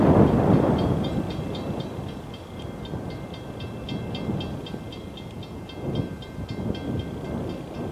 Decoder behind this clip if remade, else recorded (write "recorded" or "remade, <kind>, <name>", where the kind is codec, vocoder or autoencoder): recorded